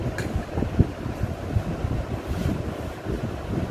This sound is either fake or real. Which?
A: real